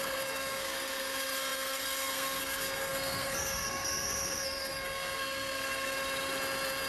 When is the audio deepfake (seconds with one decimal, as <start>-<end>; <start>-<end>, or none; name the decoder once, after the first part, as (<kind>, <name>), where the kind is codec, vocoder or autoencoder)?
0.0-6.0 (codec, SNAC)